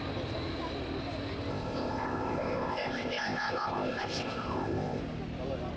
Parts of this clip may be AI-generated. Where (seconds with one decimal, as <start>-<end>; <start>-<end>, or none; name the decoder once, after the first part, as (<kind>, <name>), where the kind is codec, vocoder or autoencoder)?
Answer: 1.5-5.0 (codec, ZipCodec)